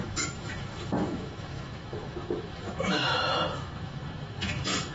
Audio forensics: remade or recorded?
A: remade